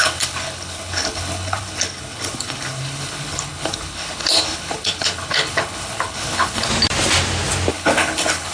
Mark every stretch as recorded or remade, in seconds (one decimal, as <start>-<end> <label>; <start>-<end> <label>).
0.0-6.7 remade; 6.7-7.7 recorded; 7.7-8.5 remade